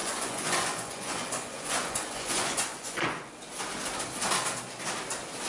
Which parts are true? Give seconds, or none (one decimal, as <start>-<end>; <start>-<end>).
3.3-5.5